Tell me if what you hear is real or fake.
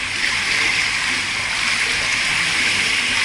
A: real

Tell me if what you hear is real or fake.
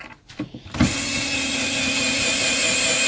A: real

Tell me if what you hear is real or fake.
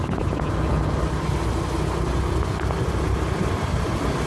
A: real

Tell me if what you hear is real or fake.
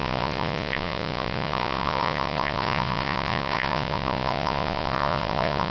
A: fake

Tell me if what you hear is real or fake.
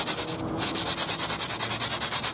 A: real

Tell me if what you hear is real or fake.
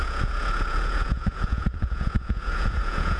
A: fake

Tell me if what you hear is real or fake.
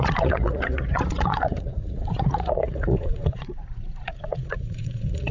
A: fake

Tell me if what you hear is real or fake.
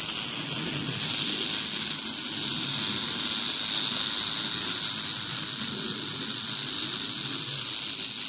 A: real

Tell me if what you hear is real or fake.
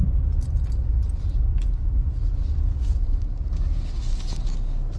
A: real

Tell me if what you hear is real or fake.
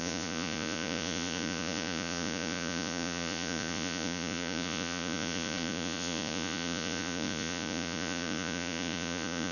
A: fake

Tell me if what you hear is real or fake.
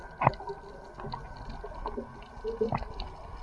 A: real